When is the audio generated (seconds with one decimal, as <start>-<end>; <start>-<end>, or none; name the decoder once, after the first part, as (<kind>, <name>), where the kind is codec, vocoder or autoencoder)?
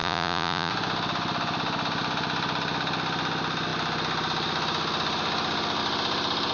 0.0-0.7 (vocoder, Vocos)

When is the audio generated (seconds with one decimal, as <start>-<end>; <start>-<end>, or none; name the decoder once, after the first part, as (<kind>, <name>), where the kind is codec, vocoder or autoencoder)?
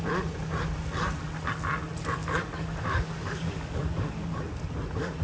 2.2-4.4 (codec, DAC)